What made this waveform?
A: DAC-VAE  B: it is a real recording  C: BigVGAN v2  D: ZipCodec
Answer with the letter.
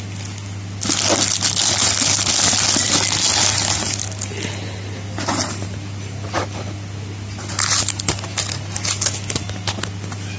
B